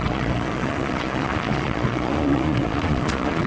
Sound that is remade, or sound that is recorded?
remade